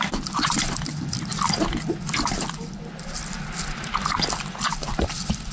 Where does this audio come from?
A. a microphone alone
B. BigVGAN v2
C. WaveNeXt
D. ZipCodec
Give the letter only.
B